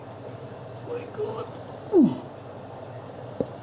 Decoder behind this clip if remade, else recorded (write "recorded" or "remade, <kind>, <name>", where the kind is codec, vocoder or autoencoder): recorded